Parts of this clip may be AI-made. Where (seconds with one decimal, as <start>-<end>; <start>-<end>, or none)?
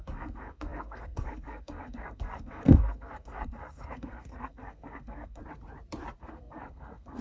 0.0-5.4; 6.2-7.2